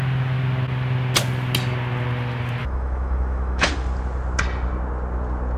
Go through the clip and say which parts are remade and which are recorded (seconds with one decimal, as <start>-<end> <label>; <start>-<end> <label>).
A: 0.0-2.6 recorded; 2.6-3.7 remade; 3.7-5.6 recorded